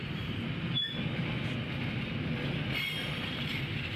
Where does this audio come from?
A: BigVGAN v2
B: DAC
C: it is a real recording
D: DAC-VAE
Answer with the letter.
C